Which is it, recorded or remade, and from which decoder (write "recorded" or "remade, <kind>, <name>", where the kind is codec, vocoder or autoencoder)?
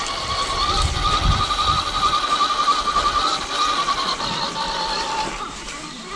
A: recorded